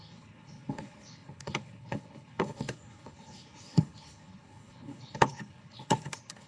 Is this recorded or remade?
remade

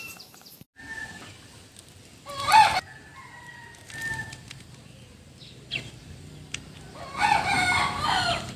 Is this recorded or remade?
recorded